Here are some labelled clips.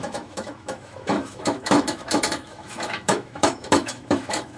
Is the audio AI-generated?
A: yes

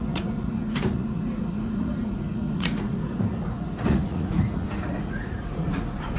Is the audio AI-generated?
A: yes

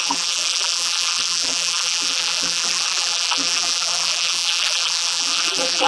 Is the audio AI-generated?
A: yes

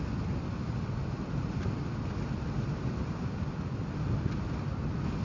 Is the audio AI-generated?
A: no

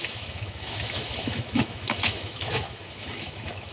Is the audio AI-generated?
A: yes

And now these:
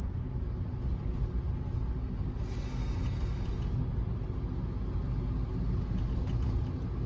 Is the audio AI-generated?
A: no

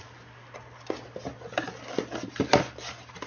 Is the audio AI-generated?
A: no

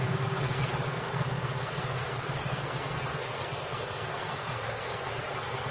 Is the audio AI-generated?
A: yes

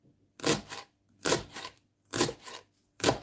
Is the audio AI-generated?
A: no